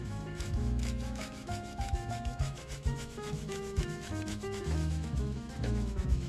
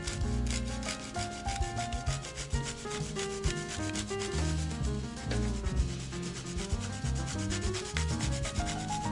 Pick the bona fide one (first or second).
second